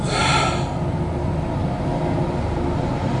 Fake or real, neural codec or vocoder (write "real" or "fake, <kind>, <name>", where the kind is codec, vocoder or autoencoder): real